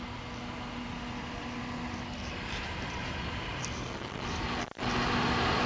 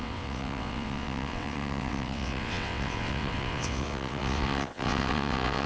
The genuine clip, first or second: first